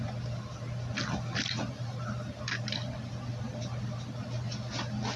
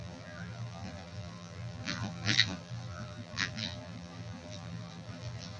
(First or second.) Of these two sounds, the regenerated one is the second